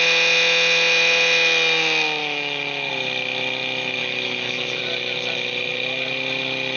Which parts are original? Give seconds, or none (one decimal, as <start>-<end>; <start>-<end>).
0.0-2.2; 2.9-4.0; 4.8-6.8